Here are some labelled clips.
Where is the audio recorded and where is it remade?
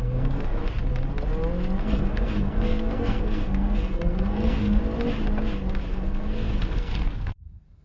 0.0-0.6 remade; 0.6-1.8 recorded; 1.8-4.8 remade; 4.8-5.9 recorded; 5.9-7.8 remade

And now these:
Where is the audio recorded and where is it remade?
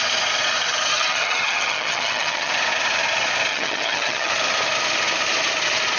0.0-0.9 recorded; 0.9-2.5 remade; 2.5-3.5 recorded; 3.5-4.3 remade; 4.3-6.0 recorded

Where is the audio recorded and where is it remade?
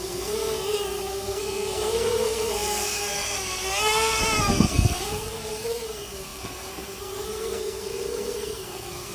0.0-9.1 remade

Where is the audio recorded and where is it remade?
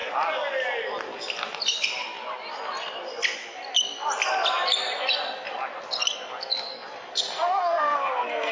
0.0-7.1 recorded; 7.1-8.5 remade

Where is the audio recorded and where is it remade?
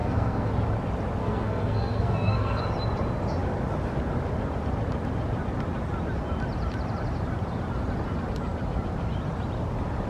0.0-0.5 remade; 0.5-1.2 recorded; 1.2-2.6 remade; 2.6-10.1 recorded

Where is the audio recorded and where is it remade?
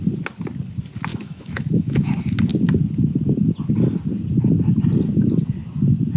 0.0-1.1 recorded; 1.1-2.1 remade; 2.1-6.2 recorded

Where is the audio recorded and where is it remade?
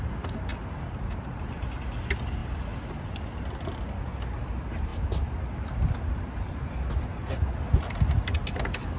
0.0-9.0 recorded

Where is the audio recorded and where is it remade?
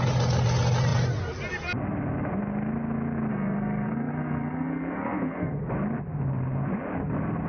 0.0-3.3 recorded; 3.3-5.7 remade; 5.7-7.5 recorded